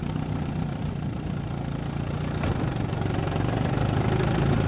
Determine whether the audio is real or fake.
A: fake